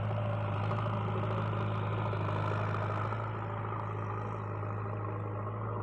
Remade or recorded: recorded